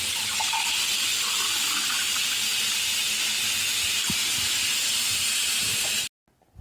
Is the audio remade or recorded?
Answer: recorded